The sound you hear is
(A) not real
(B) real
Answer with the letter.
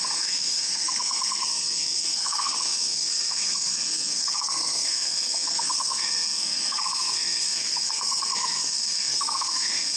A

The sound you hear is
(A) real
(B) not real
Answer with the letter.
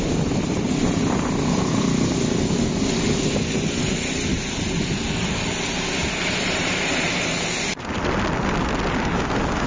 A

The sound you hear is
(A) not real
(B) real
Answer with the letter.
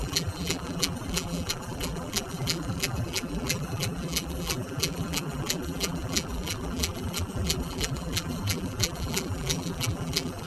A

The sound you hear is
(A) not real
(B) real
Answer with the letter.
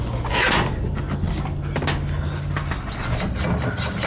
B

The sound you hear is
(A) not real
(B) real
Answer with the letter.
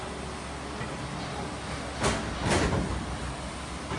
B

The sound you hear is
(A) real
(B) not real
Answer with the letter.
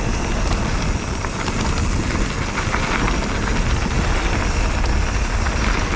A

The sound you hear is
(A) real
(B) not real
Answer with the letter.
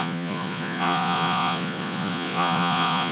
B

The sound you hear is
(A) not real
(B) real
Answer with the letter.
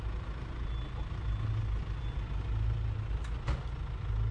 B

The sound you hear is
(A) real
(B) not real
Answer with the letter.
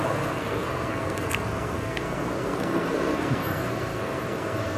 B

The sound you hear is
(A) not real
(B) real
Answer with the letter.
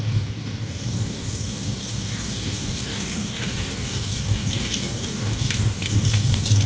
A